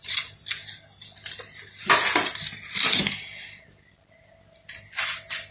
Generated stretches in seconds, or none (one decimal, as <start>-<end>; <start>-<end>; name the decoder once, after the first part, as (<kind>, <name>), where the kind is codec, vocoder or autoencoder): none